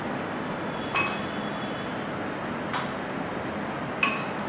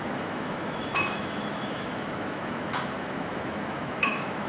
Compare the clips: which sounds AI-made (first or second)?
second